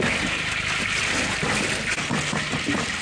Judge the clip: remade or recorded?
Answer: recorded